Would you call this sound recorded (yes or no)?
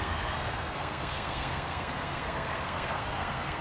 no